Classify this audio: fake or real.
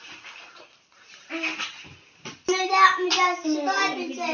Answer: real